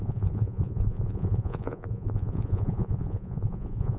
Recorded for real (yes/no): no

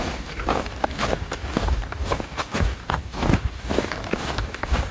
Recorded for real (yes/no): no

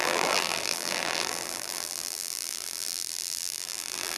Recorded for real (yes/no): no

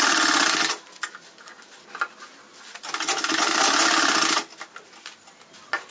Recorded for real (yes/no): yes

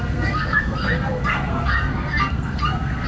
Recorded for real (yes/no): no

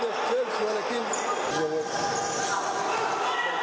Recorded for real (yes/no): yes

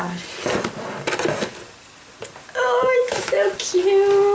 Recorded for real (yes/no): yes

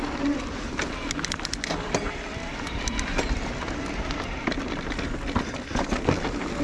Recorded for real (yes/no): yes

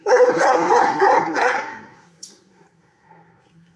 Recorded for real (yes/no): no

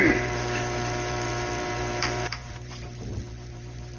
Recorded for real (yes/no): no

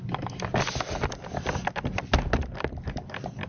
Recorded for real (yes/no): yes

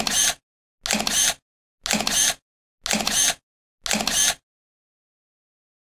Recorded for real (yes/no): yes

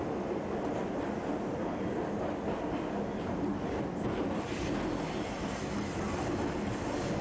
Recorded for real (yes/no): yes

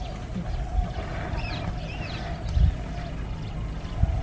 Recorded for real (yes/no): yes